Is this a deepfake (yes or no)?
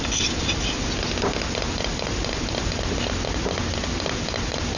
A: no